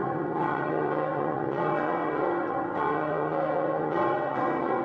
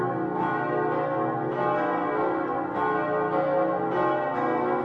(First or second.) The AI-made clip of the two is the first